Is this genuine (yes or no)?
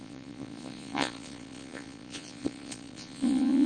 no